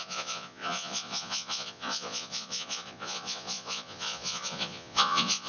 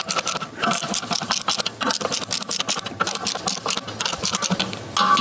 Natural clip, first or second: second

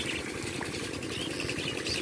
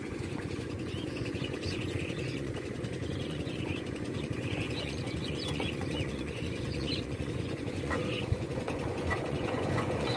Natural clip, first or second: first